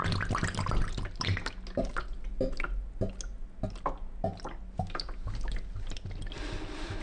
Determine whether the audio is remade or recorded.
recorded